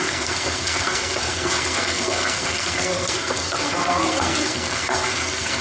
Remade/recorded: remade